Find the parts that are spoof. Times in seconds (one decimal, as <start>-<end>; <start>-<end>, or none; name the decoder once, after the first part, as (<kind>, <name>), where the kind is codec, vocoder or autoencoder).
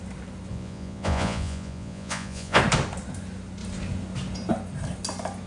0.5-2.6 (vocoder, Vocos)